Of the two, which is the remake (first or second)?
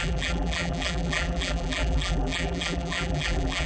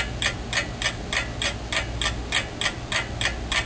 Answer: first